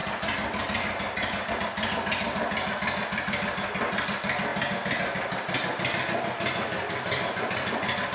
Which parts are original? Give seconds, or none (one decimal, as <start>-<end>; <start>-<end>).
0.0-8.1